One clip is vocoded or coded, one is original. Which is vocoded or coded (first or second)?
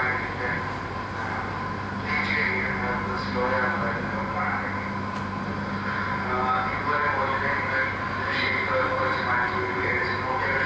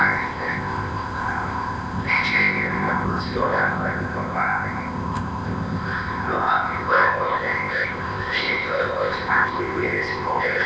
second